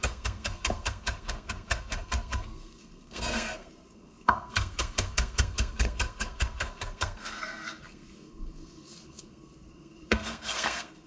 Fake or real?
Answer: fake